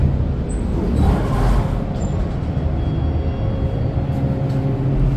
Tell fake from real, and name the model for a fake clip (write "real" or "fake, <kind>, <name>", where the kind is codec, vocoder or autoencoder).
real